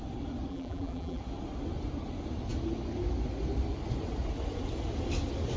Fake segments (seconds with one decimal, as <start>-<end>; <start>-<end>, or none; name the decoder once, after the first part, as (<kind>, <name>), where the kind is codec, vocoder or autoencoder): 0.5-1.2 (vocoder, BigVGAN v2)